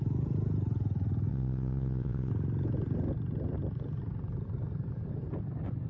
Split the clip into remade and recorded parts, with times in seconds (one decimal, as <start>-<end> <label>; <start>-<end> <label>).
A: 0.0-1.3 recorded; 1.3-2.3 remade; 2.3-5.9 recorded